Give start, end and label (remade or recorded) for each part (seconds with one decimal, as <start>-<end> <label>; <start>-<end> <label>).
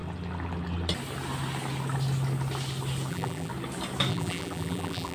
0.0-3.1 recorded; 3.1-3.5 remade; 3.5-4.1 recorded; 4.1-5.1 remade